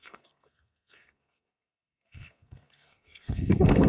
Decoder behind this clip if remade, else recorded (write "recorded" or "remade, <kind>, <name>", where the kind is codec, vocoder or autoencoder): remade, codec, SNAC